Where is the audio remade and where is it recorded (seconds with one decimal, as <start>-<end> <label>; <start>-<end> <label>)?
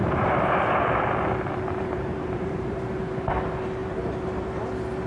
0.0-3.1 remade; 3.1-3.8 recorded; 3.8-4.5 remade; 4.5-5.1 recorded